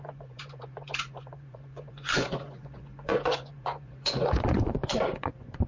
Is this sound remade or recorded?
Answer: remade